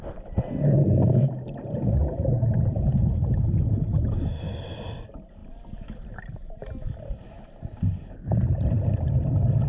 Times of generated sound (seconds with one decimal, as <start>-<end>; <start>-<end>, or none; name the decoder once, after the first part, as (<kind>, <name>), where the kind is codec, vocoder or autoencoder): 2.0-2.8 (vocoder, BigVGAN v2)